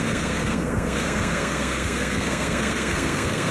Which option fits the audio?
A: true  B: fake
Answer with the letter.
B